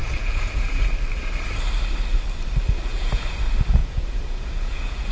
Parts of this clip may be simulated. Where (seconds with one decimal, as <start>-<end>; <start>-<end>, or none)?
0.0-0.8; 2.9-3.4; 3.8-5.1